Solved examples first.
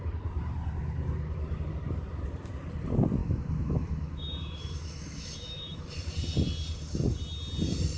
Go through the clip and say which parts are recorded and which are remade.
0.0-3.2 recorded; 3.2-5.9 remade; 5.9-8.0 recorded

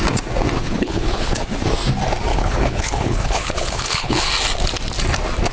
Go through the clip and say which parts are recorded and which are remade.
0.0-0.6 recorded; 0.6-1.4 remade; 1.4-2.3 recorded; 2.3-4.3 remade; 4.3-5.5 recorded

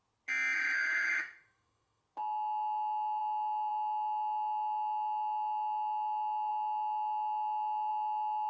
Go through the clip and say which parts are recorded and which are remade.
0.0-0.8 recorded; 0.8-2.0 remade; 2.0-8.5 recorded

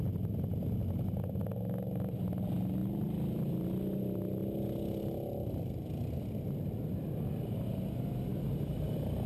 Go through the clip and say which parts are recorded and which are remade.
0.0-9.3 recorded

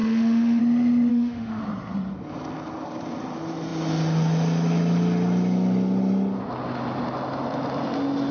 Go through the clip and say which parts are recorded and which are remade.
0.0-0.6 remade; 0.6-1.1 recorded; 1.1-1.6 remade; 1.6-8.3 recorded